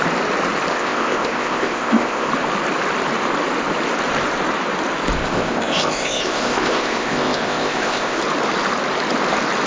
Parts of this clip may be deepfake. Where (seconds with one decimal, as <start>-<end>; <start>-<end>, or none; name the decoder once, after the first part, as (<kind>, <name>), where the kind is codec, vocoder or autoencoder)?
0.7-2.3 (codec, ZipCodec); 5.2-8.2